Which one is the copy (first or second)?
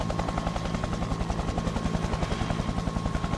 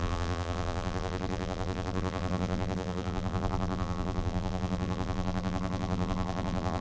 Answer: second